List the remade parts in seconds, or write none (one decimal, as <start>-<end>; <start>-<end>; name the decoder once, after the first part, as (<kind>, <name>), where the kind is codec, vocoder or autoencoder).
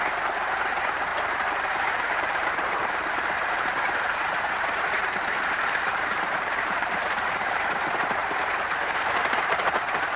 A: 1.1-4.0 (vocoder, BigVGAN v2); 5.9-7.6; 8.2-9.6